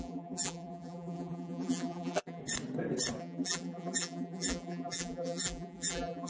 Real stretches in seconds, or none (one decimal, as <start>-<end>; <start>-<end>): 2.4-3.2